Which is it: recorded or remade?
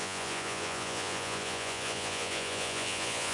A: remade